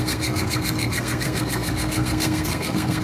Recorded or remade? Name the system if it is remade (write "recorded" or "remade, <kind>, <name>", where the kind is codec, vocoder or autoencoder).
remade, codec, SNAC